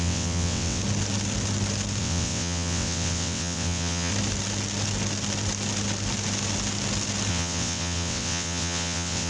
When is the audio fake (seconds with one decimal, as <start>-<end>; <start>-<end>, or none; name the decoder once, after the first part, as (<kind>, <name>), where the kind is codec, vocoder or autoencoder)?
0.0-0.8 (vocoder, WaveNeXt); 2.0-4.1; 7.3-9.3